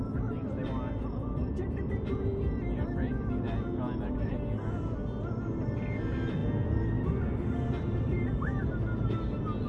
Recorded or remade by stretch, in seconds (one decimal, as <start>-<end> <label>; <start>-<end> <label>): 0.0-9.7 recorded